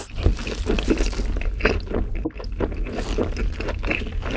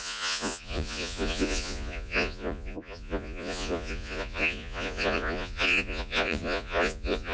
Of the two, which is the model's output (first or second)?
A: second